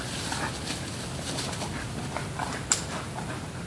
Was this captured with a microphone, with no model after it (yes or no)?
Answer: no